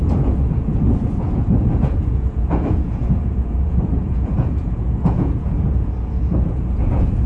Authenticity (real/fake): fake